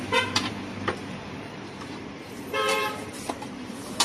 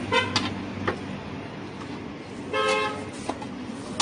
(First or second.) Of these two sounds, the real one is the second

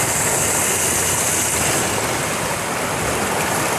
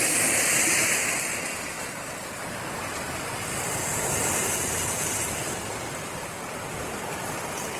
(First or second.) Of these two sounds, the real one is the first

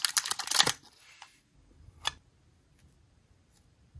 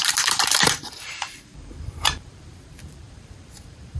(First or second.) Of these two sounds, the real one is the first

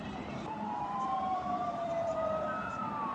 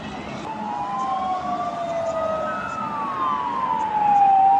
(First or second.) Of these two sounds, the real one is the second